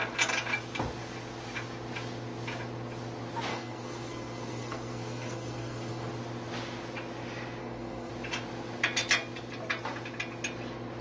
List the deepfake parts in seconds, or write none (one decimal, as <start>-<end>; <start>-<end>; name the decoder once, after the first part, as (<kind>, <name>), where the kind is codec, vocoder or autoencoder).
3.5-6.1 (codec, SNAC); 7.6-8.1